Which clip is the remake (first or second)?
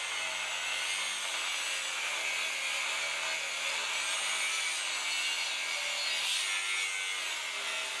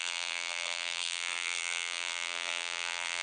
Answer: second